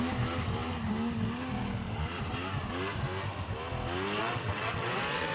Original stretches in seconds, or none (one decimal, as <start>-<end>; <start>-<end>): 0.0-4.2